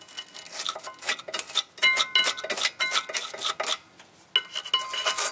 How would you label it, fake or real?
real